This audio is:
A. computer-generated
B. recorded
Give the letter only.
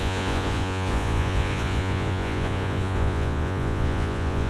A